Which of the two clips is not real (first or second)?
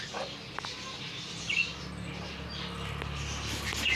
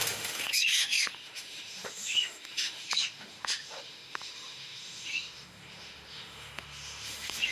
second